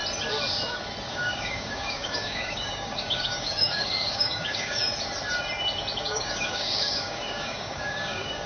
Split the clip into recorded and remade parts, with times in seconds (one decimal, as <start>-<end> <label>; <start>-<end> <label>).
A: 0.0-1.1 recorded; 1.1-4.8 remade; 4.8-6.0 recorded; 6.0-8.5 remade